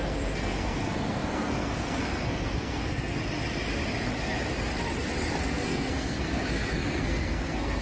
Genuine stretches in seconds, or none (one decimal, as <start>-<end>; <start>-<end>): 3.2-5.4